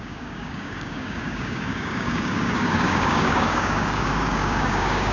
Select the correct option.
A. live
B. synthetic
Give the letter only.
B